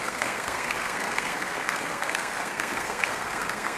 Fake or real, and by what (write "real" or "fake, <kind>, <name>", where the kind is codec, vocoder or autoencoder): fake, codec, SNAC